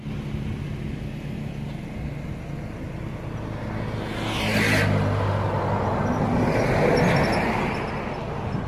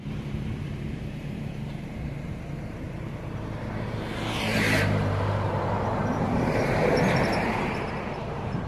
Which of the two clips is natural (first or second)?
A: first